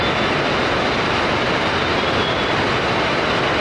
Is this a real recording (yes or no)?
yes